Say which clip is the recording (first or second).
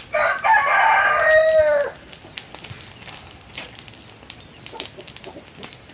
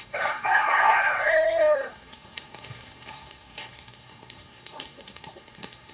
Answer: first